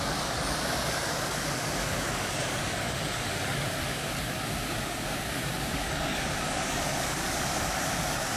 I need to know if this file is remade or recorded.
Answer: remade